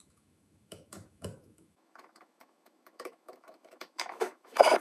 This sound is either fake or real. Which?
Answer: fake